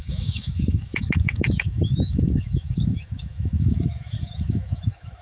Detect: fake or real fake